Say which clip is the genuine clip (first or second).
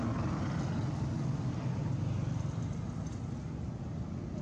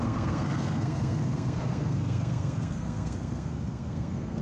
first